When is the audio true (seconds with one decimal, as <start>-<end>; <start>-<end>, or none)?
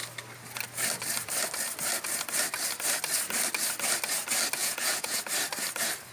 0.0-4.6; 5.2-6.1